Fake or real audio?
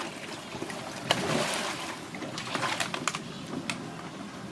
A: real